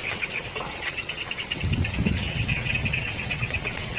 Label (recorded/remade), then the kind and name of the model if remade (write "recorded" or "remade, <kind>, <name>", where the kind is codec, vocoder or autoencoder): remade, vocoder, WaveNeXt